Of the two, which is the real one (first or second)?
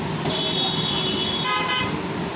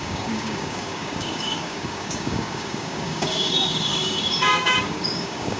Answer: first